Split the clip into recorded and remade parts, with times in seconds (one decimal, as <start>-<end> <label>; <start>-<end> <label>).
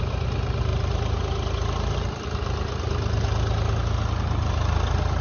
0.0-5.2 recorded